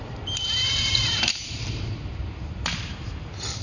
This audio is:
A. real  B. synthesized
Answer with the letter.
B